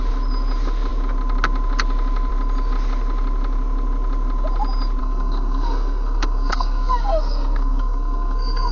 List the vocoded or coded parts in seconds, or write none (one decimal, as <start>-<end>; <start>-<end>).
5.0-8.7